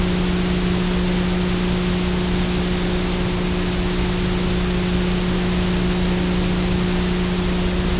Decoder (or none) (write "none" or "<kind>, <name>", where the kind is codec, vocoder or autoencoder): none